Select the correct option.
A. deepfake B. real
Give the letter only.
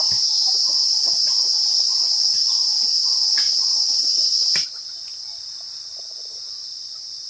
B